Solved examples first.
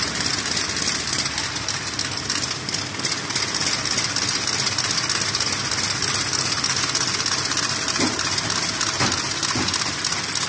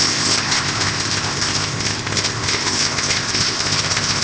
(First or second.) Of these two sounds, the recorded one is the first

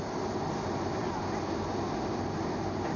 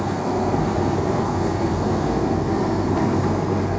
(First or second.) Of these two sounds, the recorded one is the first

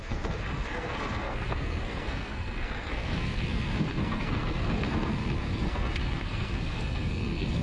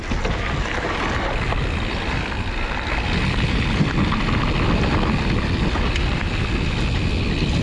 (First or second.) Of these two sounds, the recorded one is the second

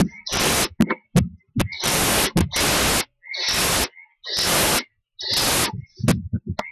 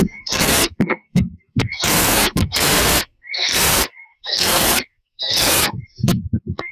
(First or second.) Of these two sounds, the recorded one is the first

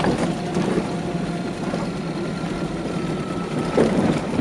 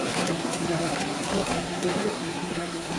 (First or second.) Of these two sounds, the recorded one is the first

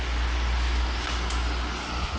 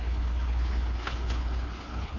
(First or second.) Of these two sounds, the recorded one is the first